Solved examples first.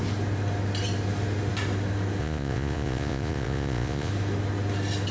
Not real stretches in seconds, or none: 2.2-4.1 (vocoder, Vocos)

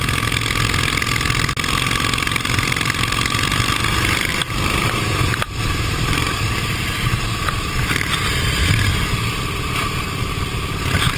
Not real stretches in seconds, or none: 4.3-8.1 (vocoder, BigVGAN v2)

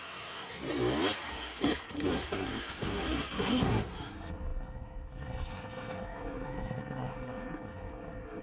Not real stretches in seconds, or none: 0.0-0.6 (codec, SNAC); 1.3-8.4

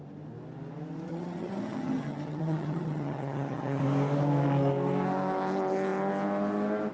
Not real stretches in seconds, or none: 1.1-3.8 (vocoder, HiFi-GAN)